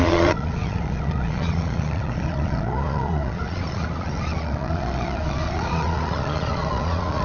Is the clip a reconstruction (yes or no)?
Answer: yes